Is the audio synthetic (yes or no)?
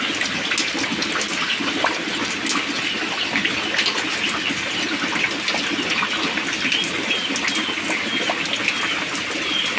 no